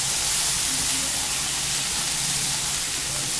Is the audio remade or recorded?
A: recorded